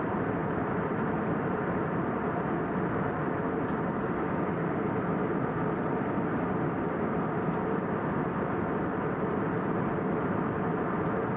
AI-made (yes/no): no